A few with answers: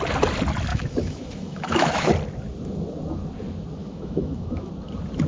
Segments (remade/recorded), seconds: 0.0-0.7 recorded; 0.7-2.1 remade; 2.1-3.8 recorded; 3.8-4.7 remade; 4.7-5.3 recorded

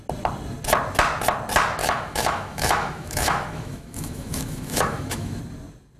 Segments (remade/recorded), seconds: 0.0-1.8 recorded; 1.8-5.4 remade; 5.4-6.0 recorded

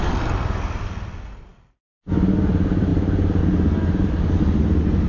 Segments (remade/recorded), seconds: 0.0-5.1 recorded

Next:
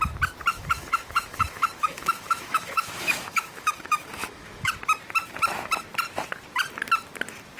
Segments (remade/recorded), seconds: 0.0-0.5 recorded; 0.5-4.7 remade; 4.7-7.6 recorded